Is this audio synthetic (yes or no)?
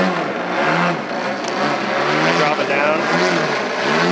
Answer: no